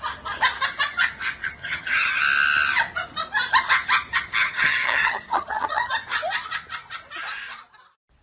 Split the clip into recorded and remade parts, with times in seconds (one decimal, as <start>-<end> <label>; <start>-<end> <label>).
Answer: 0.0-1.6 recorded; 1.6-2.2 remade; 2.2-4.4 recorded; 4.4-5.9 remade; 5.9-8.2 recorded